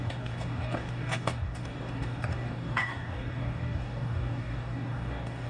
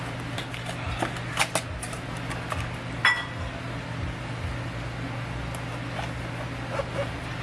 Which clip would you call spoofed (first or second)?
first